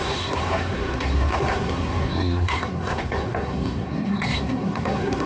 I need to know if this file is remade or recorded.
remade